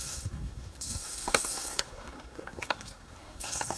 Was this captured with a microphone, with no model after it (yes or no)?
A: no